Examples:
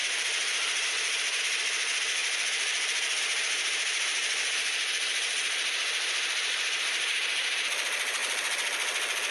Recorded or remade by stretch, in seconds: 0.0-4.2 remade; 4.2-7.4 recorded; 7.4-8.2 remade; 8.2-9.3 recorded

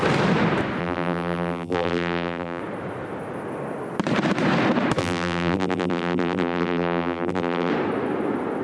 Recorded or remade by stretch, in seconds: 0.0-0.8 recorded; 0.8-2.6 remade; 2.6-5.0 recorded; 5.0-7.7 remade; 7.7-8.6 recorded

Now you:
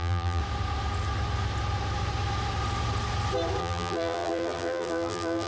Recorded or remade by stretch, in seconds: 0.0-0.4 remade; 0.4-3.6 recorded; 3.6-5.5 remade